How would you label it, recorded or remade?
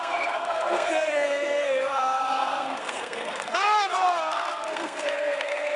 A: remade